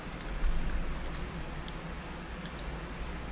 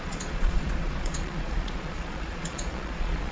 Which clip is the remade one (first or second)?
second